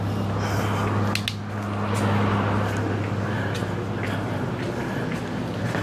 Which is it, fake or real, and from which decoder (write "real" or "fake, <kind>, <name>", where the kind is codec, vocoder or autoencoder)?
real